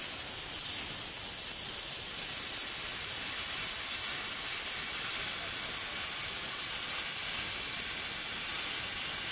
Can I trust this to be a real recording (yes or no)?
yes